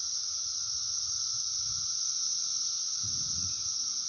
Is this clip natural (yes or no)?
no